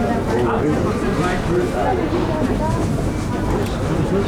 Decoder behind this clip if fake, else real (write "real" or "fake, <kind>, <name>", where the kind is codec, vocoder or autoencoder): real